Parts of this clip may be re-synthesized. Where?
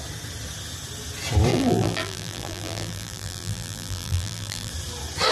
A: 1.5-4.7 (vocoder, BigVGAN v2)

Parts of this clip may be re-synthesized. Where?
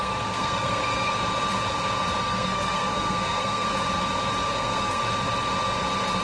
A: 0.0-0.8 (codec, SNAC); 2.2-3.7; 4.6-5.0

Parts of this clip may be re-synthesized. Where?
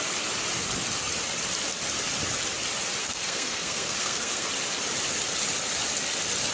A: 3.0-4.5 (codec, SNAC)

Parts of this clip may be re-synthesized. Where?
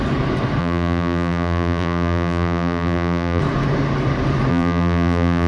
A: 0.6-3.4 (vocoder, BigVGAN v2); 4.5-5.5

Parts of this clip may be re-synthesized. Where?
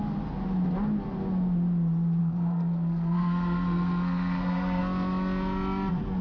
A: 2.2-4.8 (codec, SNAC)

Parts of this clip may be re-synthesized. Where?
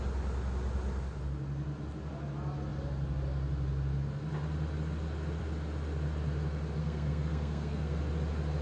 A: 6.8-8.0 (codec, SNAC)